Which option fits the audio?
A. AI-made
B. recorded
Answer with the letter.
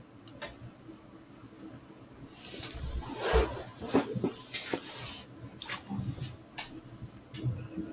B